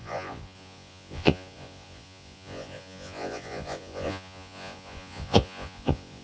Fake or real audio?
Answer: fake